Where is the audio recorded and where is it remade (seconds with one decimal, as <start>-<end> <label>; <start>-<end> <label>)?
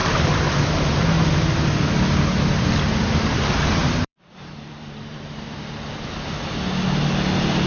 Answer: 0.0-1.0 remade; 1.0-3.8 recorded; 3.8-5.6 remade; 5.6-7.7 recorded